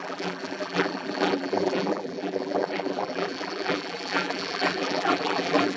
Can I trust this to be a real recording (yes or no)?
no